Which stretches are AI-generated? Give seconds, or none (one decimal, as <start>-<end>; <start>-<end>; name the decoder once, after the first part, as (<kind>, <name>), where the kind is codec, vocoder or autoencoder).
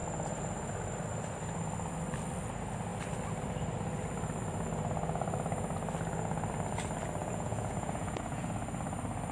7.2-8.5 (vocoder, Vocos)